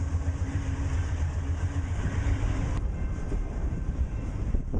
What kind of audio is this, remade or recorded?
remade